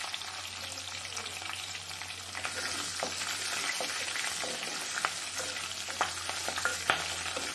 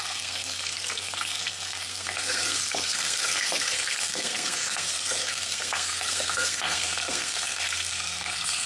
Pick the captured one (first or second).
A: first